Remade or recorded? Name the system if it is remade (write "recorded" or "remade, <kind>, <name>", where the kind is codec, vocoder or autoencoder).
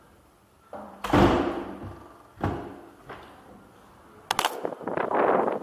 recorded